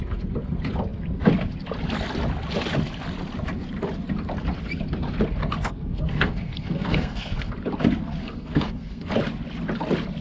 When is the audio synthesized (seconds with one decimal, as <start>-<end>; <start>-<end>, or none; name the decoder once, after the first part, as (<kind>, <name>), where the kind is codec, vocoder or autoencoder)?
5.4-7.5 (codec, SNAC); 8.2-9.1